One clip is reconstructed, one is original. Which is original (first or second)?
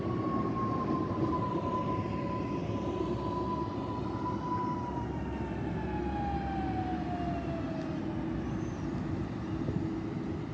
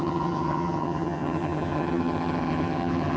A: first